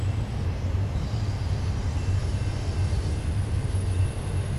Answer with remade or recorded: recorded